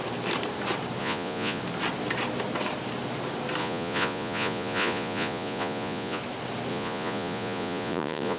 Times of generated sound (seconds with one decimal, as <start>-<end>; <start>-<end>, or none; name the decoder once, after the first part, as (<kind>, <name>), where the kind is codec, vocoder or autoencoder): 1.0-1.6 (vocoder, Vocos); 3.6-6.2; 6.7-8.4